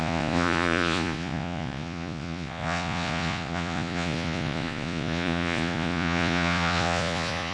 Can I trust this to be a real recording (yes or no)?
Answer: no